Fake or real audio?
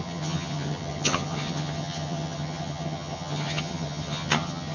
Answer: fake